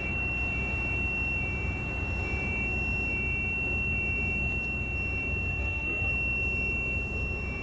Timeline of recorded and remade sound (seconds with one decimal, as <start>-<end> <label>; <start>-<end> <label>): 0.0-5.5 recorded; 5.5-6.1 remade; 6.1-7.6 recorded